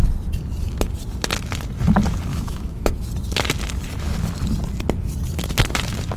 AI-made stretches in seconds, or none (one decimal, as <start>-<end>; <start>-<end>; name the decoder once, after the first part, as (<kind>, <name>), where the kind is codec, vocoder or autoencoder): 2.3-2.9 (autoencoder, DAC-VAE)